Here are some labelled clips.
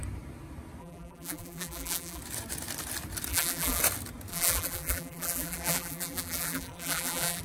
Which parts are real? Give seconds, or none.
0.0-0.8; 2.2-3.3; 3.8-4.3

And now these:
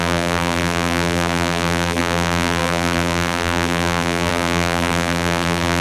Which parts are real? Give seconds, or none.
none

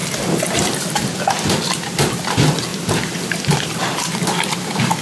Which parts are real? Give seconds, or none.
0.0-2.7; 3.8-5.0